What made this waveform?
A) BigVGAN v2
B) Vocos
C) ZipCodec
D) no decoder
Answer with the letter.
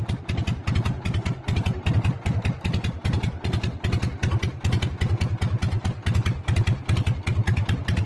D